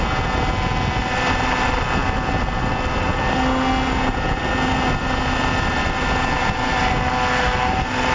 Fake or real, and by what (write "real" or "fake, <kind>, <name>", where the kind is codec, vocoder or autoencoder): real